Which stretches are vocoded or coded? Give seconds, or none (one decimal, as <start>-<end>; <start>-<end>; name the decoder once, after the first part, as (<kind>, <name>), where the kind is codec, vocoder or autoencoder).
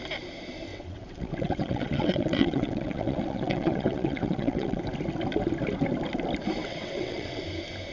0.7-4.8 (vocoder, WaveNeXt); 6.6-7.4